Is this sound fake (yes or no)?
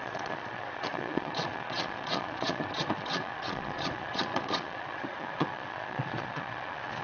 yes